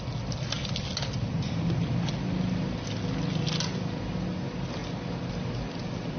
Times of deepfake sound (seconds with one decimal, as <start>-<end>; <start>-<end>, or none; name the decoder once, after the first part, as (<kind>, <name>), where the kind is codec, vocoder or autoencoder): none